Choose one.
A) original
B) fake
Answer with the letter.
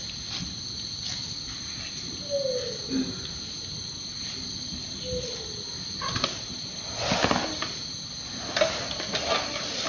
A